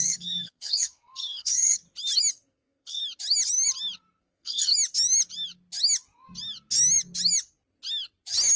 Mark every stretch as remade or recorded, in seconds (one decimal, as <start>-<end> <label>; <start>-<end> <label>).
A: 0.0-1.8 remade; 1.8-2.3 recorded; 2.3-3.0 remade; 3.0-4.2 recorded; 4.2-4.7 remade; 4.7-8.6 recorded